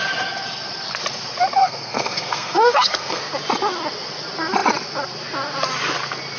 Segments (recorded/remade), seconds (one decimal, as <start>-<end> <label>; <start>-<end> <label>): 0.0-1.6 recorded; 1.6-3.2 remade; 3.2-6.4 recorded

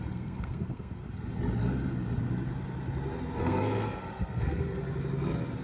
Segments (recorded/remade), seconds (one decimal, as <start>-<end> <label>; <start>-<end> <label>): 0.0-1.0 remade; 1.0-3.4 recorded; 3.4-4.8 remade; 4.8-5.6 recorded

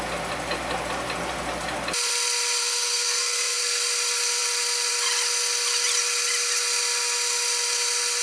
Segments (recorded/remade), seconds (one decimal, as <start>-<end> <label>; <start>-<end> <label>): 0.0-2.6 recorded; 2.6-3.6 remade; 3.6-8.2 recorded

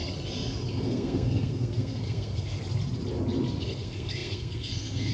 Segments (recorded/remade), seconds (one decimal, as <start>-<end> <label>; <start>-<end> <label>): 0.0-0.7 recorded; 0.7-2.6 remade; 2.6-3.6 recorded; 3.6-5.1 remade